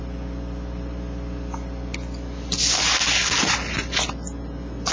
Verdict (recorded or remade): recorded